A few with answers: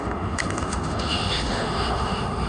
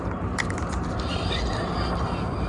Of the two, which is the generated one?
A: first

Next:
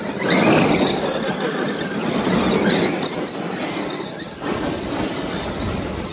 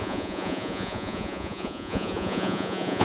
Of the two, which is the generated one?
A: second